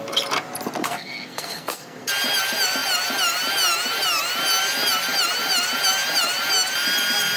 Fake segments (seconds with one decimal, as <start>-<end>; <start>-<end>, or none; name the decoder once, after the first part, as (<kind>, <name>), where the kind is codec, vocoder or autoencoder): 0.8-2.1 (codec, SNAC)

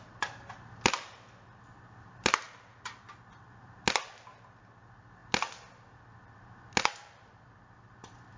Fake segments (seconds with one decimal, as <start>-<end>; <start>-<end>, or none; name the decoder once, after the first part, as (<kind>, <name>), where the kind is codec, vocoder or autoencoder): none

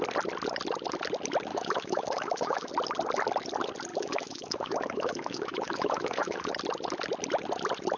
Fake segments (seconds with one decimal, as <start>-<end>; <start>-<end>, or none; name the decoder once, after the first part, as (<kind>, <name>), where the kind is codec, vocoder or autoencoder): 1.5-2.7 (autoencoder, DAC-VAE); 3.9-6.5

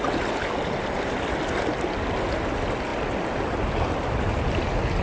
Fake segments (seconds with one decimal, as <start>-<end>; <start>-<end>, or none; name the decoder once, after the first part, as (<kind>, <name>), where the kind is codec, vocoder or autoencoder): none

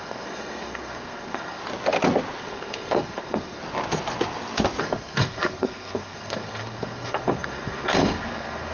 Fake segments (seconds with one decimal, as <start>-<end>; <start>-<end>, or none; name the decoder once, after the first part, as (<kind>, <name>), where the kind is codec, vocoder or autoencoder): 0.0-1.6 (codec, SNAC); 2.4-3.6; 4.8-8.7

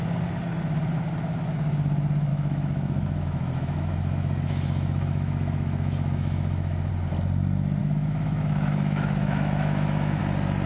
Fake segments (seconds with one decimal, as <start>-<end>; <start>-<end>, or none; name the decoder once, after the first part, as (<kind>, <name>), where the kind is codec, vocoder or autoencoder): 2.3-6.9 (autoencoder, DAC-VAE); 7.8-10.2

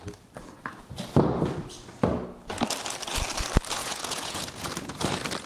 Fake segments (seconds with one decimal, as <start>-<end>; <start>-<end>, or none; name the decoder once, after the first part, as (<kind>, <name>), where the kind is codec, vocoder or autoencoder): 3.8-4.7 (vocoder, Vocos)